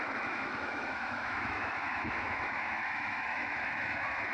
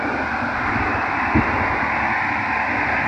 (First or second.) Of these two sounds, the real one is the second